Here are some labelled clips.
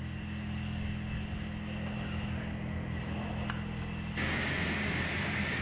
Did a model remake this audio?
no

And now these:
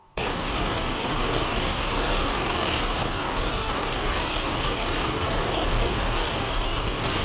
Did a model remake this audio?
yes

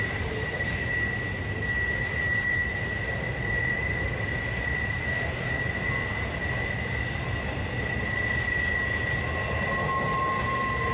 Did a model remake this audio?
no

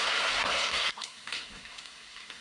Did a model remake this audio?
yes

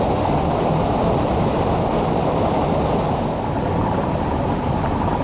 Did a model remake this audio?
no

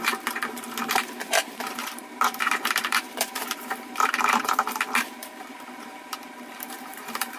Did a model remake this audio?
yes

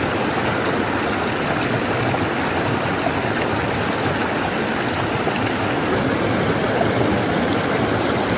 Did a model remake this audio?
no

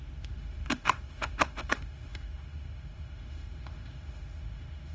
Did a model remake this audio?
yes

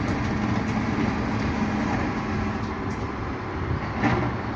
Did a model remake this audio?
no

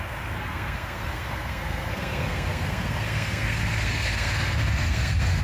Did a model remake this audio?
yes